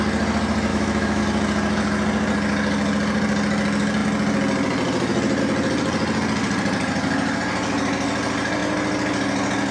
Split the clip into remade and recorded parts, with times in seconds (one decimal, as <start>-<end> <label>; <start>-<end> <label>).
0.0-0.7 recorded; 0.7-1.2 remade; 1.2-9.7 recorded